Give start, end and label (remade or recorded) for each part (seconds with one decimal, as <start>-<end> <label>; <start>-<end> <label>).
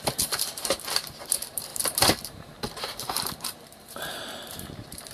0.0-5.1 remade